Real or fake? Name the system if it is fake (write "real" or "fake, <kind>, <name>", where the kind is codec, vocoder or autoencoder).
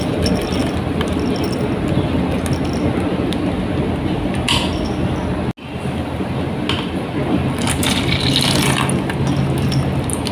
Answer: real